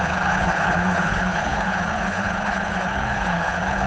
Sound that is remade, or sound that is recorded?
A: remade